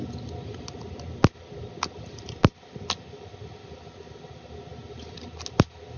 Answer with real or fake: real